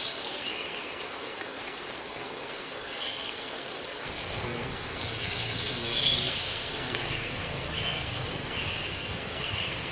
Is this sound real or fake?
fake